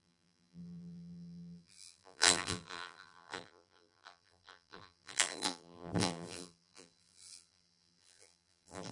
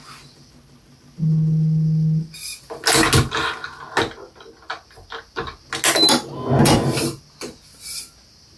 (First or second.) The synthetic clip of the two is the first